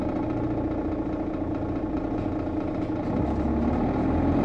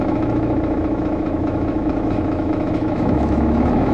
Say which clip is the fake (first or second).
second